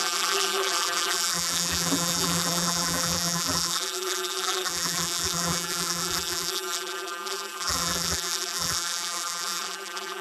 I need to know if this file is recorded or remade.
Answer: remade